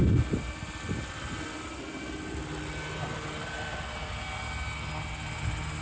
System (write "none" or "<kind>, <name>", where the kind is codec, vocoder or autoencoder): none